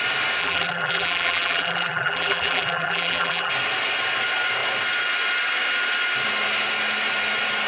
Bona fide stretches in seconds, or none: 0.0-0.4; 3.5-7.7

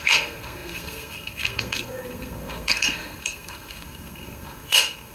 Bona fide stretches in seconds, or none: none

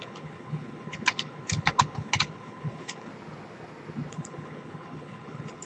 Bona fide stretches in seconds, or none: 3.1-4.1

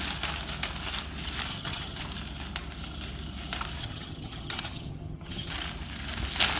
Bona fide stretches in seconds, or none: 0.0-1.5; 2.0-3.8; 5.5-6.6

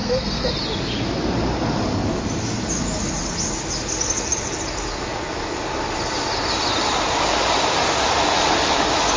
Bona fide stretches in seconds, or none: 0.5-9.2

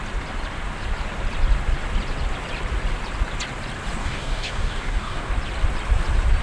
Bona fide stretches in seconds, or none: 0.0-4.0; 5.3-6.4

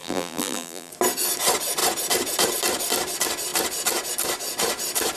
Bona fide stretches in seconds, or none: 0.9-5.2

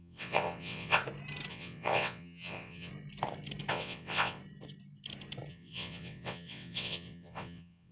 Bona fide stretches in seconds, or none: 1.0-1.5; 2.9-3.7; 4.4-5.5